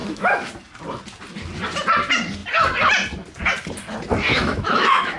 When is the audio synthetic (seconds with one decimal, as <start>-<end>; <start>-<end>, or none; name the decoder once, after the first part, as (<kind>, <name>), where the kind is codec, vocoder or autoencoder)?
0.0-0.5 (autoencoder, DAC-VAE); 4.3-5.2